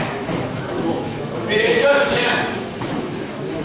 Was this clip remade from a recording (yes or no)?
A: yes